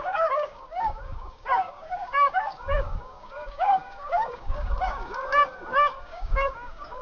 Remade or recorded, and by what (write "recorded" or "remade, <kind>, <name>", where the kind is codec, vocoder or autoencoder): remade, codec, DAC